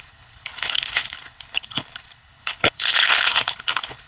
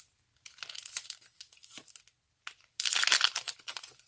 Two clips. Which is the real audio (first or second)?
second